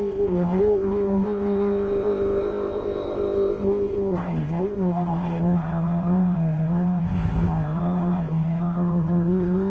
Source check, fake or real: fake